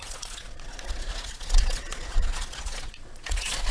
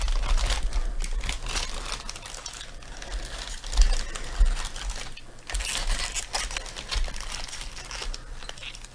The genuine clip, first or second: second